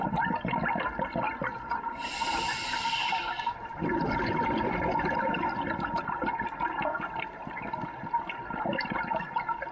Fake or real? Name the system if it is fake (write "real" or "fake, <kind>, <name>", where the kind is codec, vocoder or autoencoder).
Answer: real